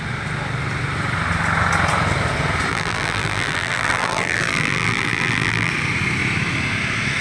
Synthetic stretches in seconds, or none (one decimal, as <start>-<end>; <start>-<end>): 2.7-5.7